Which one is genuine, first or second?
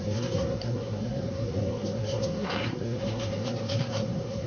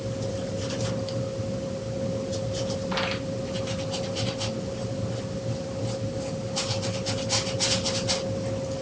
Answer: second